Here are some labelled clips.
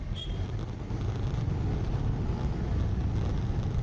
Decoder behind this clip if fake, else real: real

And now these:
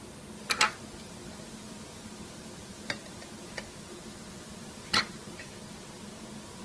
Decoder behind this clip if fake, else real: real